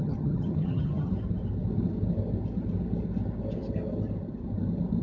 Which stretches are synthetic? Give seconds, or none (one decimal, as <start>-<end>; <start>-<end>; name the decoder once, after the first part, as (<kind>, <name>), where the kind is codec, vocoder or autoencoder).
0.0-1.1 (vocoder, HiFi-GAN)